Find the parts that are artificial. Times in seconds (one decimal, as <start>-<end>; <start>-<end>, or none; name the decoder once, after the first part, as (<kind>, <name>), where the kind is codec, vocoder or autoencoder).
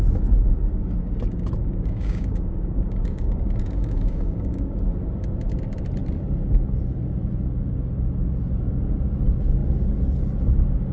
1.6-4.8 (codec, DAC)